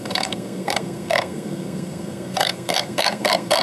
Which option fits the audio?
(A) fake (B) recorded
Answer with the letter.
A